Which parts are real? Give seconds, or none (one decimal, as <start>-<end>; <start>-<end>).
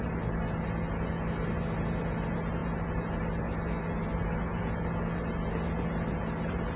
0.0-6.8